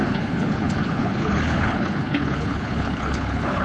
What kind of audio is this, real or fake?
fake